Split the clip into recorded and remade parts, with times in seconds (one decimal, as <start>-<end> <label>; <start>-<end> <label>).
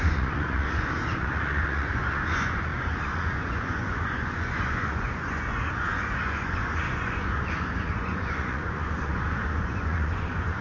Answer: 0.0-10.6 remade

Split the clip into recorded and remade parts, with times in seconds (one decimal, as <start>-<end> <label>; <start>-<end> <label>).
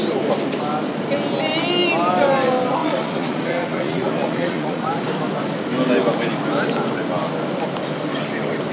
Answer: 0.0-2.8 recorded; 2.8-4.9 remade; 4.9-8.7 recorded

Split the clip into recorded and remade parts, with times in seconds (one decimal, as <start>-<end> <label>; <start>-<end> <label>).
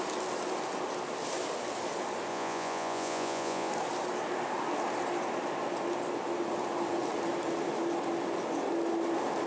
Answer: 0.0-2.3 recorded; 2.3-3.7 remade; 3.7-9.5 recorded